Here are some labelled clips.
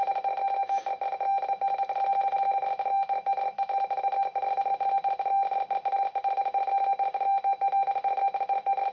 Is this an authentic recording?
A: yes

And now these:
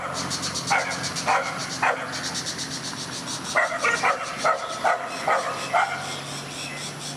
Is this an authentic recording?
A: yes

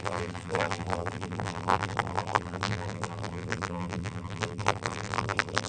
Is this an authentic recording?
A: no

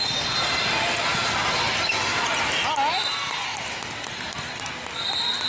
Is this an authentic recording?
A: yes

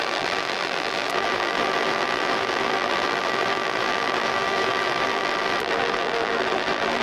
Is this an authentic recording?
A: no